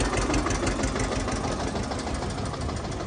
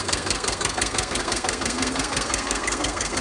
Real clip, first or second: first